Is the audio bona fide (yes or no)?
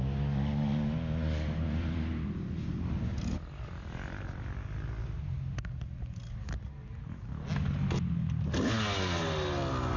yes